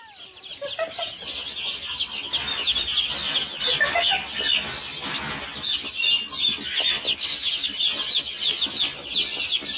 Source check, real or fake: real